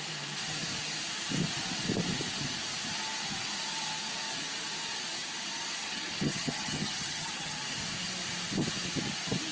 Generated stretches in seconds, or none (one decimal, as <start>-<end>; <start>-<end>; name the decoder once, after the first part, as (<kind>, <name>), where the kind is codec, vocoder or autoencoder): 5.8-7.6 (vocoder, HiFi-GAN)